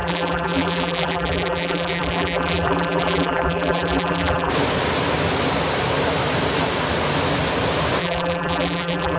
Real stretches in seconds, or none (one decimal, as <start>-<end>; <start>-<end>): 4.5-8.0